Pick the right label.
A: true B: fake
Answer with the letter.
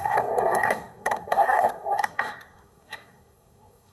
B